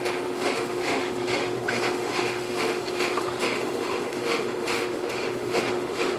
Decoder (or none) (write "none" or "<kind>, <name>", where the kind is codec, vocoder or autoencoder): autoencoder, DAC-VAE